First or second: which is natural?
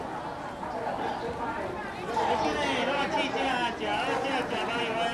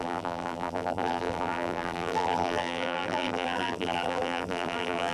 first